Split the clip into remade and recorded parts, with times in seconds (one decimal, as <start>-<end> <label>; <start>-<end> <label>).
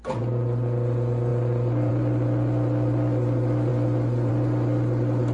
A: 0.0-5.3 recorded